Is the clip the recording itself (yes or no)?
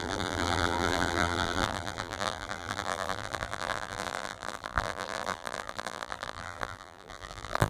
no